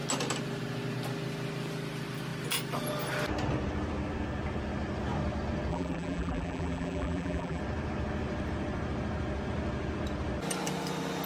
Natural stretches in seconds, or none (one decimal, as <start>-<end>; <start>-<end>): 0.0-5.7; 7.6-11.3

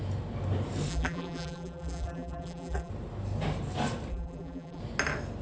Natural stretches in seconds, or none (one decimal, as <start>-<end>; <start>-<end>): 0.0-0.9; 2.9-4.1; 4.8-5.4

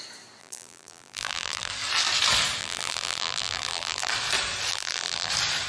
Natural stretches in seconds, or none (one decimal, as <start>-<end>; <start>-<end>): 0.0-0.4; 1.7-2.6; 4.1-4.7; 5.3-5.7